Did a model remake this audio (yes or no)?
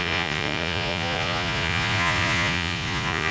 yes